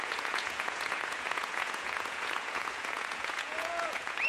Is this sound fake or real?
fake